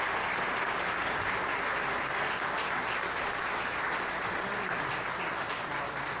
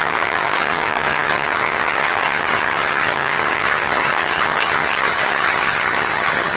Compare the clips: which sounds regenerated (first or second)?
second